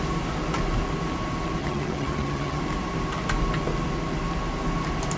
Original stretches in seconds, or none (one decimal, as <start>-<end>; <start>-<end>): 0.0-1.6; 2.6-5.2